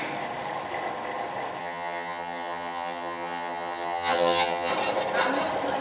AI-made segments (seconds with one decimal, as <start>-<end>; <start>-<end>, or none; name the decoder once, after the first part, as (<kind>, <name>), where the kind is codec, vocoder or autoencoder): 1.6-4.7 (vocoder, HiFi-GAN)